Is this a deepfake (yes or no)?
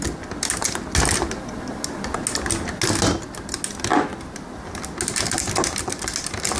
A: no